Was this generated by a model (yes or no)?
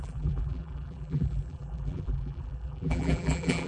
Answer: yes